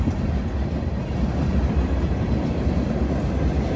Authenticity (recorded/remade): recorded